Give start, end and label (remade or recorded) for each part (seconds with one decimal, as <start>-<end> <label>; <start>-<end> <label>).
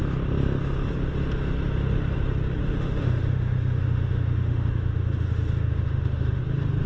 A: 0.0-2.6 recorded; 2.6-6.4 remade; 6.4-6.9 recorded